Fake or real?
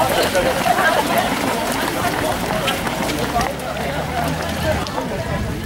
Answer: real